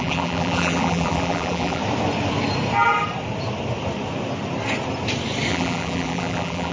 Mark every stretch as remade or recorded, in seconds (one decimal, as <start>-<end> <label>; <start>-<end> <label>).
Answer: 0.0-1.8 remade; 1.8-5.5 recorded; 5.5-6.7 remade

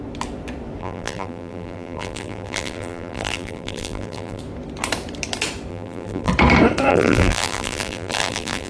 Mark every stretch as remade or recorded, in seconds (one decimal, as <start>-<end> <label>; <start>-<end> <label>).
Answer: 0.0-0.8 recorded; 0.8-4.4 remade; 4.4-5.7 recorded; 5.7-6.3 remade; 6.3-6.9 recorded; 6.9-8.7 remade

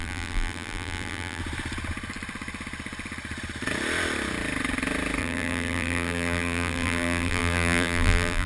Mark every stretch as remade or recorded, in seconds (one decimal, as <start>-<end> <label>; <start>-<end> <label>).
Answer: 0.0-1.4 remade; 1.4-5.2 recorded; 5.2-8.5 remade

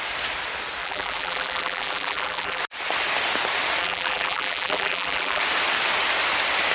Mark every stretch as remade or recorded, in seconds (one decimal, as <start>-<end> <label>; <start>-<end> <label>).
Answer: 0.0-0.8 recorded; 0.8-2.6 remade; 2.6-3.8 recorded; 3.8-5.4 remade; 5.4-6.7 recorded